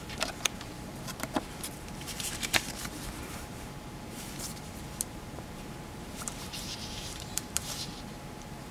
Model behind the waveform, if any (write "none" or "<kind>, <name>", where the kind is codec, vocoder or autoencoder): vocoder, BigVGAN v2